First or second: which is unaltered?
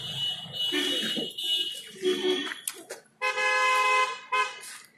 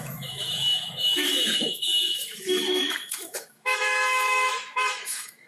first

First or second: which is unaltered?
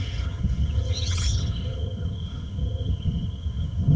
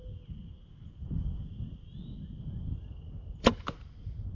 second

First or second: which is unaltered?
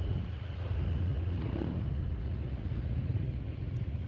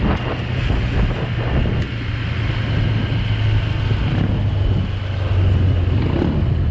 second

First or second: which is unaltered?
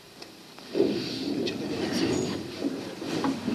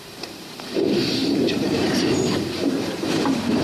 first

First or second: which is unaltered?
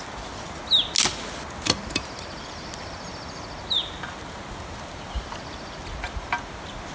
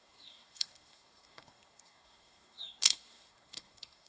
first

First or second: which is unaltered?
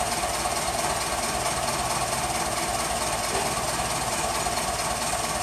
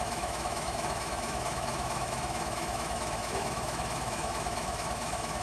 first